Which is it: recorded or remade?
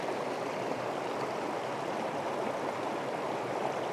recorded